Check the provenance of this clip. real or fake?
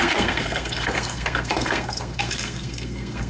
fake